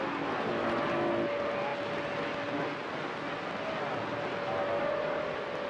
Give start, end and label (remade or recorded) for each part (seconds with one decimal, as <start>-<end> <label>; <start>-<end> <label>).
0.0-5.7 recorded